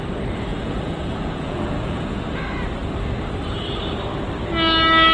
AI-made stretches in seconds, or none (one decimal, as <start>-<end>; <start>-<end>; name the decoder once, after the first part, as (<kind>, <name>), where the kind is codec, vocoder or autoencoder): 0.5-2.1 (vocoder, Vocos)